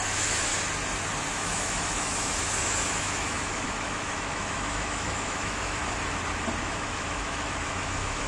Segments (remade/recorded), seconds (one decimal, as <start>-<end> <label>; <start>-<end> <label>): 0.0-0.5 remade; 0.5-1.3 recorded; 1.3-5.8 remade; 5.8-6.6 recorded; 6.6-8.3 remade